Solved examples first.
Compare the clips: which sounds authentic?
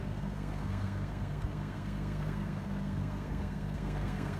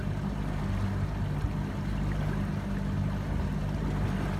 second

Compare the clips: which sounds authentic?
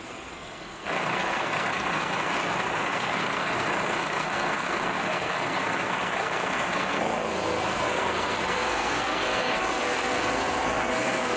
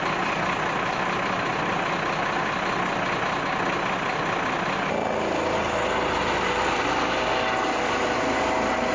second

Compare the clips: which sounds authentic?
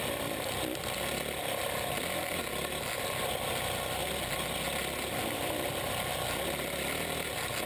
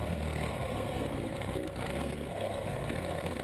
first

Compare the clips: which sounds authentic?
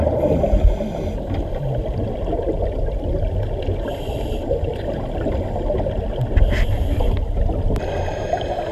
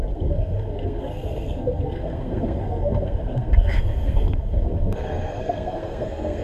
first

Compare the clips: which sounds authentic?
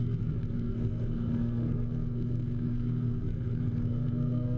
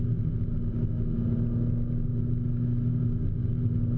second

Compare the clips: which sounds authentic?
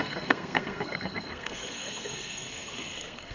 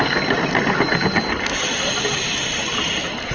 second